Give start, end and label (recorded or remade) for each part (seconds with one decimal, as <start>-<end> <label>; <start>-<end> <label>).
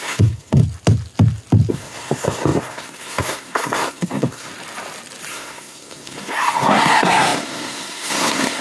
0.0-0.6 remade; 0.6-1.7 recorded; 1.7-4.5 remade; 4.5-5.3 recorded; 5.3-8.6 remade